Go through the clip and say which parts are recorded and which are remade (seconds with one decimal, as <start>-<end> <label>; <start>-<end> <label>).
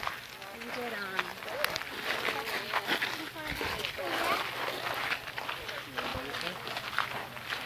0.0-7.7 recorded